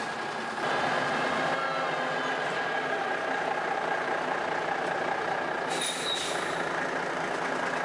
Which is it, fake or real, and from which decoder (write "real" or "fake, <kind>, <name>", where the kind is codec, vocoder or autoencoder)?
real